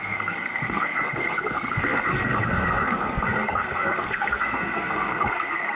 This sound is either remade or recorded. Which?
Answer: remade